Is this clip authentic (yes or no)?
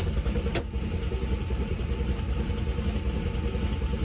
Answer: yes